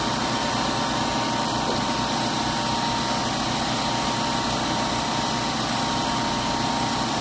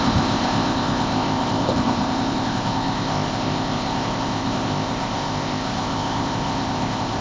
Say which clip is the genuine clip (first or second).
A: first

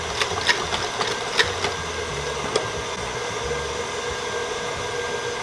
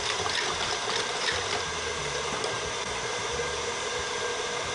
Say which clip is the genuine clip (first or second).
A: first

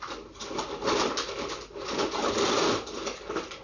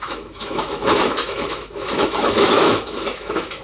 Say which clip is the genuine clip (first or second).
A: first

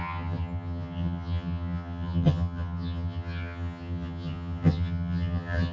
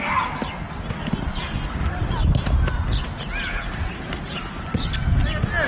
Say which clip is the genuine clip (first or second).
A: second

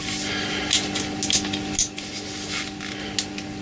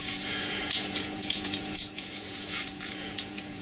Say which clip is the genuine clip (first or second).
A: first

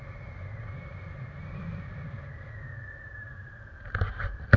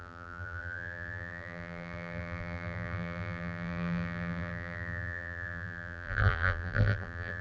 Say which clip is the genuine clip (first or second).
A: first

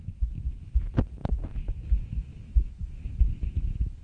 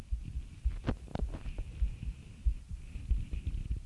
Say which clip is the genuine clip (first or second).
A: second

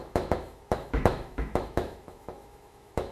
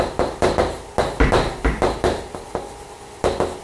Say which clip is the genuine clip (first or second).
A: second